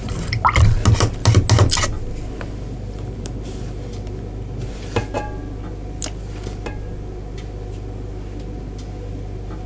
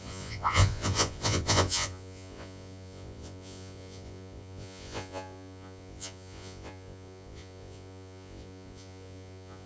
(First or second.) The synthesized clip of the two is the second